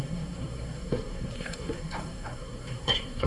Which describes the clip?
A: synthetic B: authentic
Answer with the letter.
A